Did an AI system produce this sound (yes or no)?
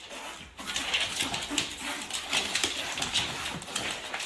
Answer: no